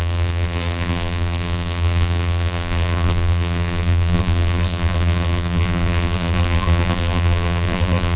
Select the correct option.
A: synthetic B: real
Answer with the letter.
A